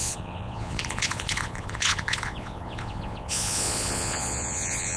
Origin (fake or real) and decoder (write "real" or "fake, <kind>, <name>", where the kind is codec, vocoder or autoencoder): fake, vocoder, Vocos